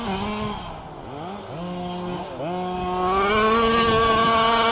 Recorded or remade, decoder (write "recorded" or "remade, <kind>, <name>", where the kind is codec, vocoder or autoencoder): recorded